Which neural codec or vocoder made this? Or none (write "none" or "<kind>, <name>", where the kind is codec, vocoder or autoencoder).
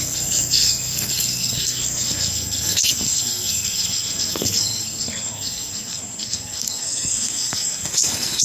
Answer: codec, SNAC